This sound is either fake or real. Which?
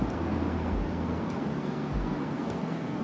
fake